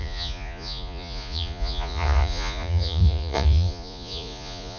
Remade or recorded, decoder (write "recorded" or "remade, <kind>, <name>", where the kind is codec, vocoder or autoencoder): remade, vocoder, Vocos